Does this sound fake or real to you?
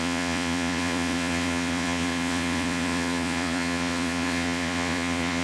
fake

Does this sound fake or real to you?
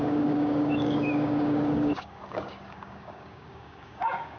fake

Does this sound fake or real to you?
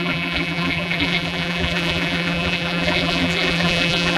fake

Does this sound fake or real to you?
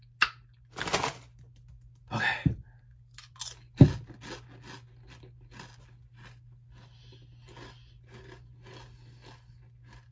real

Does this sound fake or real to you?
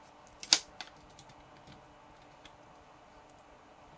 real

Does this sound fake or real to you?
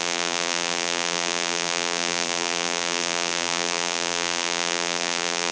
fake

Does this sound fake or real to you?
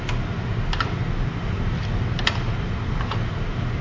real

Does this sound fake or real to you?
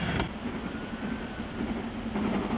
real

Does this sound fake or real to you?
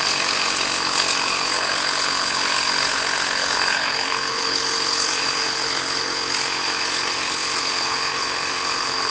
fake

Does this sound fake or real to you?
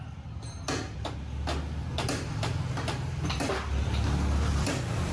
real